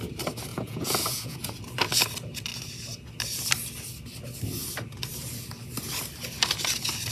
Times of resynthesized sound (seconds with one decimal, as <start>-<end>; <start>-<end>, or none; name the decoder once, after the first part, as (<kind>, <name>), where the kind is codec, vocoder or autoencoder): 0.5-1.5 (vocoder, Vocos)